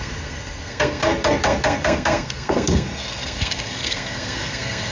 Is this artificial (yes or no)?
yes